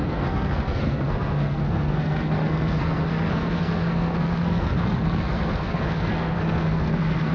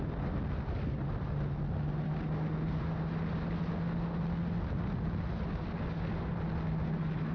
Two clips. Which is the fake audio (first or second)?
first